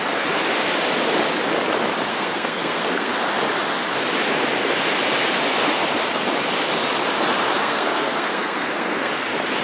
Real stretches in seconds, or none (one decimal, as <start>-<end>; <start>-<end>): 0.0-2.1; 3.1-7.6; 9.1-9.6

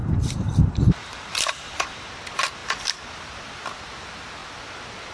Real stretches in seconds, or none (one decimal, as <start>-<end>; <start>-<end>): 2.1-5.1

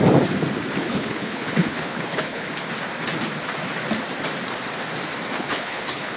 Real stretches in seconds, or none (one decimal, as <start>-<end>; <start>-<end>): 0.0-0.8; 2.5-5.3

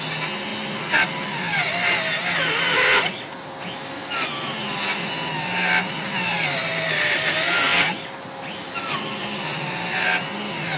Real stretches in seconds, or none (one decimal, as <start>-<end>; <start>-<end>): 0.0-10.8

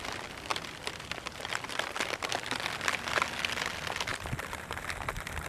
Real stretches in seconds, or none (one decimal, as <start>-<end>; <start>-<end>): 0.0-0.5; 2.3-5.5

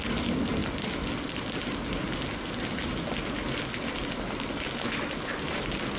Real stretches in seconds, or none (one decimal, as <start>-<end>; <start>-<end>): 0.0-6.0

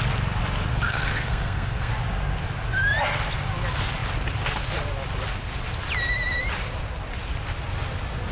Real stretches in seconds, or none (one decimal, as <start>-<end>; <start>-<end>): 0.0-0.7; 1.9-8.3

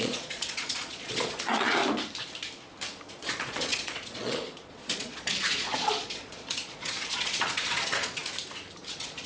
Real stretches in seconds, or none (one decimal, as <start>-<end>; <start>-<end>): 1.8-3.1; 8.2-8.9